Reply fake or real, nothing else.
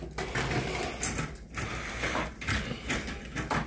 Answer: real